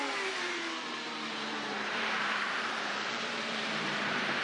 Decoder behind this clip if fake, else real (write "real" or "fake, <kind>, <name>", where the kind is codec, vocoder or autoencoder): fake, vocoder, BigVGAN v2